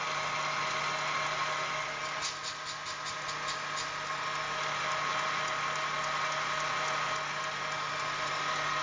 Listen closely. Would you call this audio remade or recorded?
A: recorded